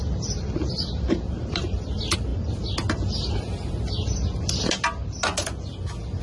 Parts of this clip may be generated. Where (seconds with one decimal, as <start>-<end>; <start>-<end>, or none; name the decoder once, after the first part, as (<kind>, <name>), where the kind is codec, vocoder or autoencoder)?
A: 0.0-1.7 (vocoder, BigVGAN v2)